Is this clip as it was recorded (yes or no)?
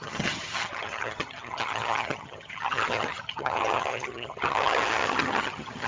no